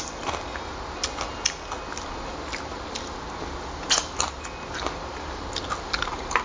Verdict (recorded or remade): recorded